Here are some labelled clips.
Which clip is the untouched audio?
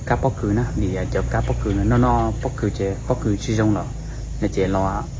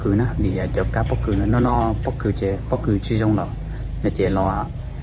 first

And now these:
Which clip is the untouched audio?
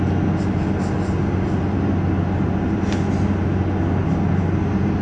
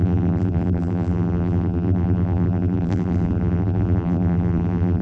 first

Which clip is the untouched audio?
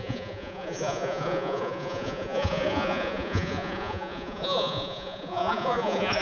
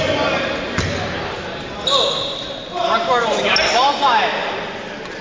second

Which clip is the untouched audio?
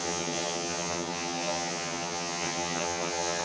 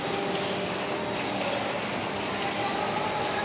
second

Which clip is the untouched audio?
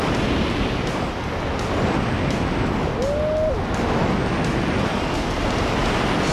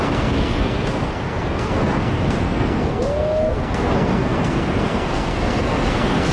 first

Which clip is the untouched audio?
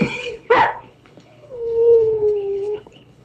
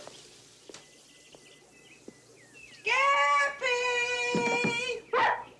second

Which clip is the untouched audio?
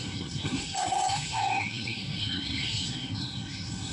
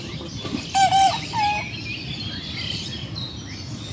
second